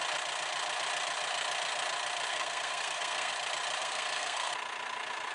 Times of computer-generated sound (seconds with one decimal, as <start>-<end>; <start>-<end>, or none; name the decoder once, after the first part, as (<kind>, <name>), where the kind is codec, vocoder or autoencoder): 2.3-3.3 (codec, SNAC); 3.8-4.5